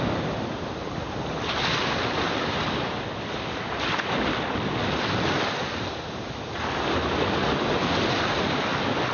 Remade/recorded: recorded